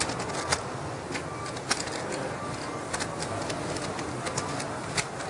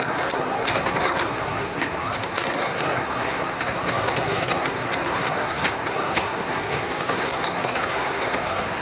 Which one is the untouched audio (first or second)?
first